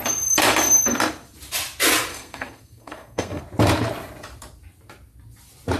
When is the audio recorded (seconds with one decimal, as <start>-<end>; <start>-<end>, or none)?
0.0-2.1; 3.4-5.8